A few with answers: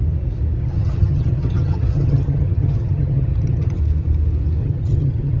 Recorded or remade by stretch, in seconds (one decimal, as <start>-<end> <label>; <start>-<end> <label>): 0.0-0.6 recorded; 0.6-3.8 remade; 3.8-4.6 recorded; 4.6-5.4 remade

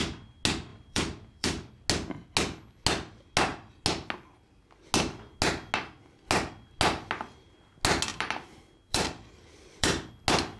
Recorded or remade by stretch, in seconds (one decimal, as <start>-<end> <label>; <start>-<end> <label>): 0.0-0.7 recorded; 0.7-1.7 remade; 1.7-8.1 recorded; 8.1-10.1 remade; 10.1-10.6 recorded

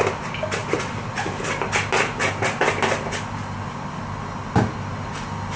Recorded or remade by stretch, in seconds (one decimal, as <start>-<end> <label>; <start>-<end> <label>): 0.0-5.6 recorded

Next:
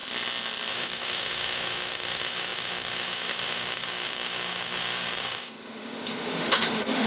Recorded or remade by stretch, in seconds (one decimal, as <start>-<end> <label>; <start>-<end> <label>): 0.0-0.7 recorded; 0.7-7.1 remade

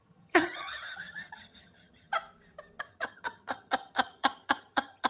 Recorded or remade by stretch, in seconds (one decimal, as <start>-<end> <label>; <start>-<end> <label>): 0.0-2.1 remade; 2.1-2.8 recorded; 2.8-5.1 remade